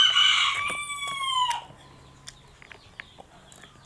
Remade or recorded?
recorded